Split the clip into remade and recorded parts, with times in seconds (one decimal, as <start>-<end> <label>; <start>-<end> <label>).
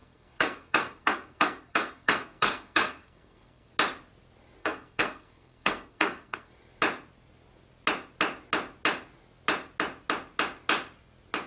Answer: 0.0-3.7 remade; 3.7-4.6 recorded; 4.6-6.5 remade; 6.5-11.5 recorded